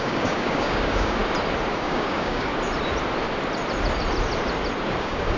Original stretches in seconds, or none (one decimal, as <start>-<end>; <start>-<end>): 1.2-1.7; 2.5-5.0